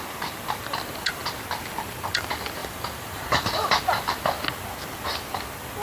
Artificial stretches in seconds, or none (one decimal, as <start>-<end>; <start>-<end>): 2.6-3.8